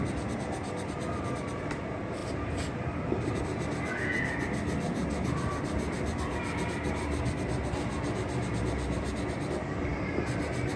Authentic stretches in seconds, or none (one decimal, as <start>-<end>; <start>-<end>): 0.0-2.2; 3.4-5.0; 6.2-9.9; 10.4-10.8